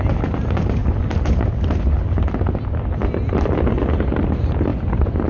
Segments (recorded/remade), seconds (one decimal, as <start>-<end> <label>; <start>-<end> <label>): 0.0-4.7 recorded; 4.7-5.3 remade